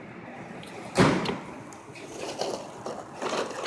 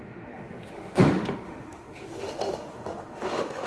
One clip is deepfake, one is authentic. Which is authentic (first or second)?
first